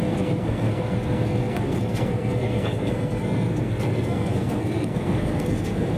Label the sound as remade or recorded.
remade